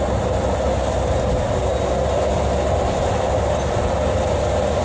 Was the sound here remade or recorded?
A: recorded